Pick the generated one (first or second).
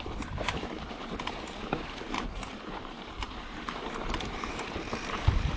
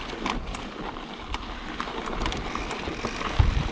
first